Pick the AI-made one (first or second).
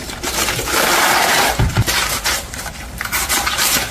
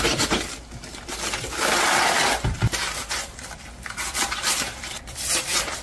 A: first